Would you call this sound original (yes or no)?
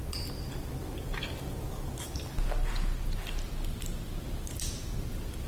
yes